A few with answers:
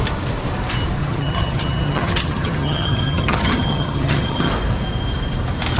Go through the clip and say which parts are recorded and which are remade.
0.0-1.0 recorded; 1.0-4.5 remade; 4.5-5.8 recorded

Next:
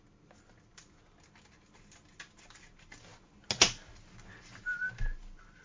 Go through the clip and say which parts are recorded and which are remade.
0.0-5.6 recorded

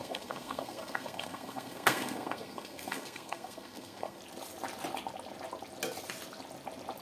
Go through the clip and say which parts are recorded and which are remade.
0.0-4.2 remade; 4.2-7.0 recorded

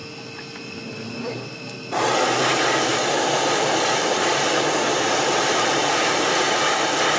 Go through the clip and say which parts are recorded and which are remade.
0.0-2.9 recorded; 2.9-5.9 remade; 5.9-7.2 recorded

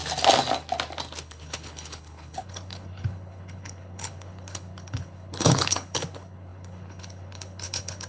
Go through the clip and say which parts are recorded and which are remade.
0.0-1.2 recorded; 1.2-8.1 remade